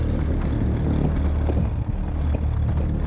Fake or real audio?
real